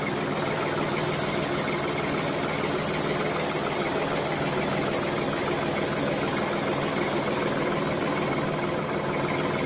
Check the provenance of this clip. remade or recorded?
recorded